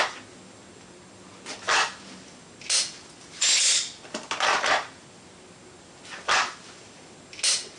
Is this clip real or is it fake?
real